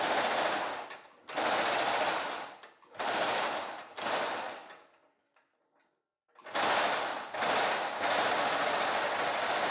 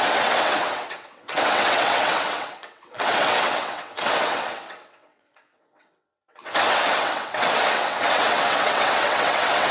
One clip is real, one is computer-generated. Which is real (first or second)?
first